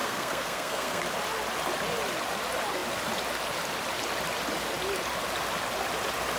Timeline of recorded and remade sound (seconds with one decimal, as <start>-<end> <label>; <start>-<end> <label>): 0.0-1.0 remade; 1.0-6.4 recorded